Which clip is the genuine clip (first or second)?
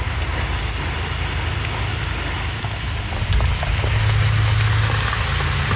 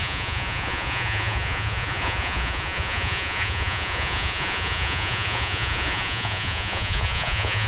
first